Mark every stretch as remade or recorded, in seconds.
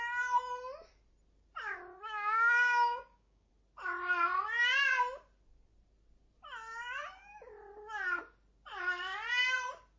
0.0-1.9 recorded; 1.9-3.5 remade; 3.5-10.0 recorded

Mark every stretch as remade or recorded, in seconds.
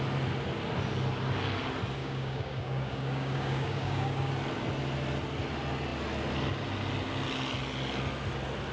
0.0-2.0 recorded; 2.0-4.3 remade; 4.3-8.7 recorded